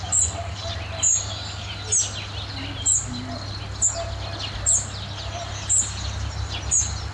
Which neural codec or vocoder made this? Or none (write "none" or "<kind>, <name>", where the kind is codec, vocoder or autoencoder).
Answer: none